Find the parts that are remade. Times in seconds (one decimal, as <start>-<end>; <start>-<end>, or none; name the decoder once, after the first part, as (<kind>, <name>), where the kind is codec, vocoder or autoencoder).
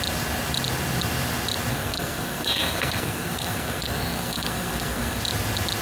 1.7-5.2 (codec, SNAC)